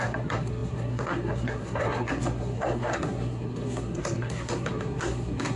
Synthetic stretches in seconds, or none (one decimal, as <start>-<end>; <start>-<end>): 0.0-5.6